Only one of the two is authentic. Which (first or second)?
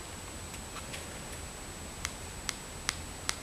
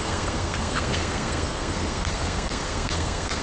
first